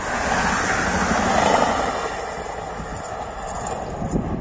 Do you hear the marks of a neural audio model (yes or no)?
no